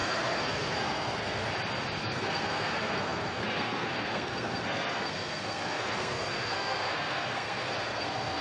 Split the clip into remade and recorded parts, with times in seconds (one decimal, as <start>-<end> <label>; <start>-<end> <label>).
0.0-1.4 remade; 1.4-2.0 recorded; 2.0-8.4 remade